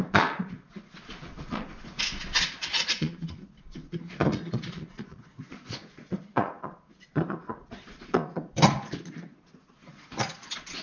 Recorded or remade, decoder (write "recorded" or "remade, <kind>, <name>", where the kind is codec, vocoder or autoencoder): remade, vocoder, Vocos